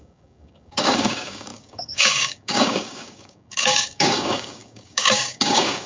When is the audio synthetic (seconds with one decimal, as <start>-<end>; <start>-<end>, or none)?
0.0-5.9